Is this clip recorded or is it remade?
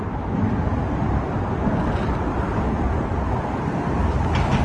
recorded